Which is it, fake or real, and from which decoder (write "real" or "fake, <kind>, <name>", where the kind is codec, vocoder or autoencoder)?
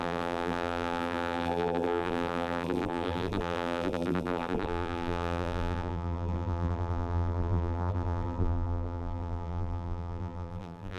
fake, vocoder, BigVGAN v2